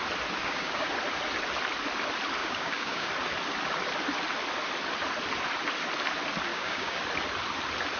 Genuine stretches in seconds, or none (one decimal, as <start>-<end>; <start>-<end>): 0.0-0.4; 0.9-2.4; 3.1-6.5; 7.0-8.0

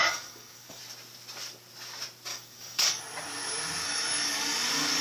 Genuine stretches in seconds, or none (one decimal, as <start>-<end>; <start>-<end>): 0.8-2.3; 3.0-3.8

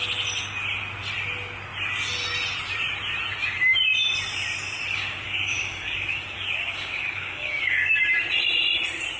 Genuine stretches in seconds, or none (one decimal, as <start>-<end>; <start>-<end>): 0.0-4.9; 7.9-9.2

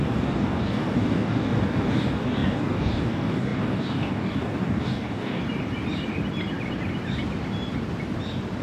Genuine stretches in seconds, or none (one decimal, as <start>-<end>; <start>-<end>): 5.4-8.6

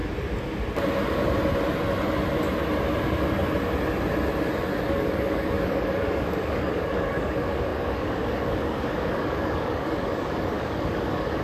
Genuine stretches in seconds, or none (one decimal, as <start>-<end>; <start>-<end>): 0.0-4.9

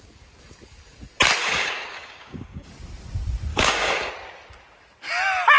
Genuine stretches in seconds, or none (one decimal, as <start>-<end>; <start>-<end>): 0.0-1.4; 2.7-3.5; 4.1-5.6

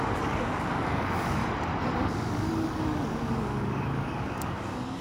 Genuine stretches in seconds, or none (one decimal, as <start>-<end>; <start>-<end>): 1.4-2.0